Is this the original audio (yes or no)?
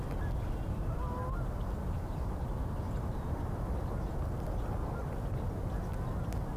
yes